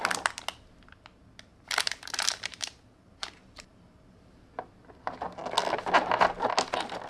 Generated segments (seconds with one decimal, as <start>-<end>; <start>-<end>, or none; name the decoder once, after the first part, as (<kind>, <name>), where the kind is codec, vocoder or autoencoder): 1.5-4.4 (vocoder, BigVGAN v2)